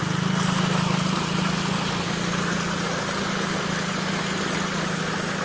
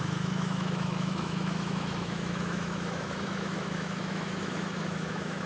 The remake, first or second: second